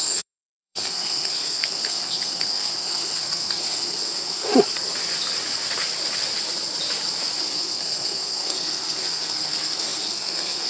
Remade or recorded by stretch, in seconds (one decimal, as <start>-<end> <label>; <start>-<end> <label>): 0.0-4.5 remade; 4.5-7.4 recorded; 7.4-10.7 remade